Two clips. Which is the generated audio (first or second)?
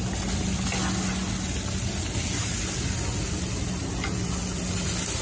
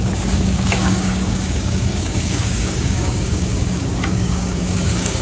second